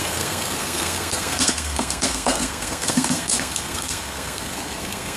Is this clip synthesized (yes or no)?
yes